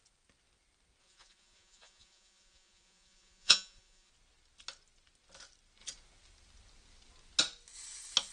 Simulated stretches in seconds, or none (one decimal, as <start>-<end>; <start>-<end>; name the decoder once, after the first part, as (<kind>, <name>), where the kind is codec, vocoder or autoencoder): 1.0-4.1 (vocoder, Vocos)